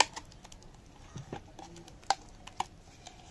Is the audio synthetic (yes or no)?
no